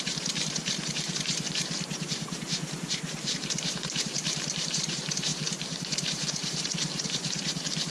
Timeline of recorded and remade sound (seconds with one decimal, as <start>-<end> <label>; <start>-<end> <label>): 0.0-7.9 remade